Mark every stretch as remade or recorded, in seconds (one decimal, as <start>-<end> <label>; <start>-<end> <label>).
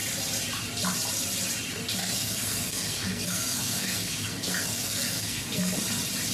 0.0-2.0 recorded; 2.0-5.8 remade; 5.8-6.3 recorded